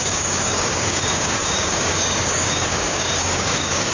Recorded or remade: remade